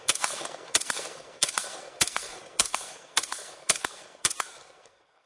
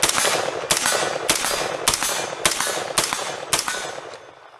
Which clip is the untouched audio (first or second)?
second